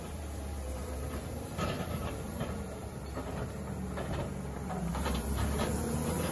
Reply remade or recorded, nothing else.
remade